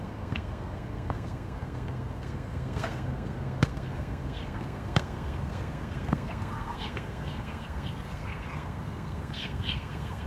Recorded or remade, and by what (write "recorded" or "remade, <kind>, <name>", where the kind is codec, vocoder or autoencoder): remade, codec, SNAC